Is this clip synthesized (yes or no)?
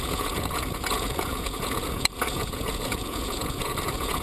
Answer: yes